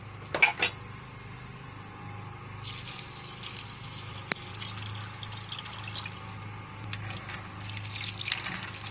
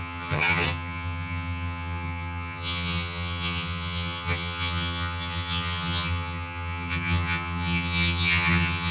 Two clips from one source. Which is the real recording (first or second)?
first